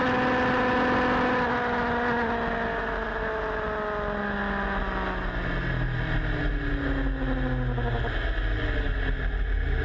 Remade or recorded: recorded